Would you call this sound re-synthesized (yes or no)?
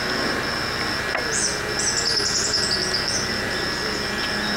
no